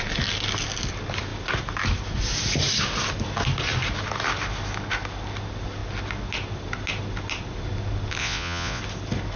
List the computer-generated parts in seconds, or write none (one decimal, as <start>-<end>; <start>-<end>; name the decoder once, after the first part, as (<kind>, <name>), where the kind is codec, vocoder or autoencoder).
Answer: 8.2-8.8 (vocoder, Vocos)